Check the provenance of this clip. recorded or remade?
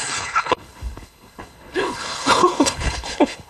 remade